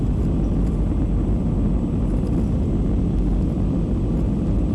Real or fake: real